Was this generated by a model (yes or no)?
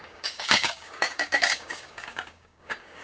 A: yes